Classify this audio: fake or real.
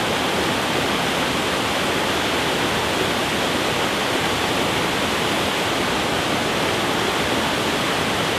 real